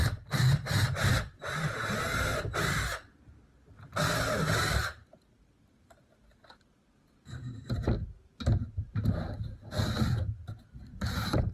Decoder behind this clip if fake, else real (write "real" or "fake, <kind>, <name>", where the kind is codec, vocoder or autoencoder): real